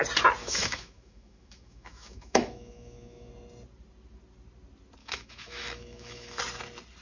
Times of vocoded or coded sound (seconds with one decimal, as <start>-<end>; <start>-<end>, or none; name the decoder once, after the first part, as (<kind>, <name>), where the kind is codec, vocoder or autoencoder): 0.4-3.3 (autoencoder, DAC-VAE); 5.0-6.4